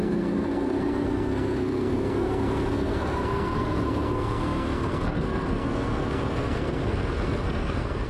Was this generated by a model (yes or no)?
yes